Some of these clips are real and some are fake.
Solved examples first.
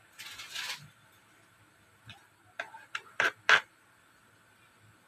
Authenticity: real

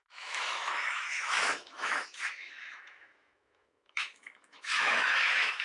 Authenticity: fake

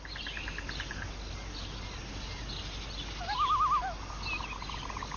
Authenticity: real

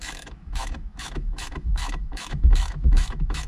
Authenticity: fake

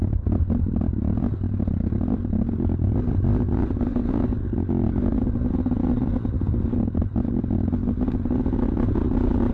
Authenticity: real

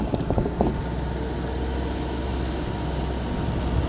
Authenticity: real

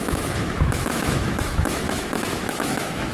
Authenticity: fake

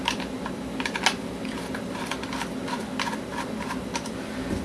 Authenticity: real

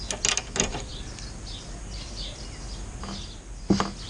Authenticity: real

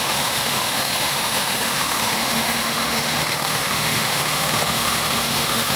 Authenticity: fake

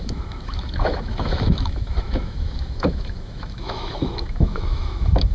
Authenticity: fake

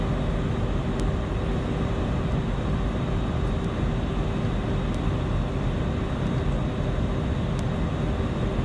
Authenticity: real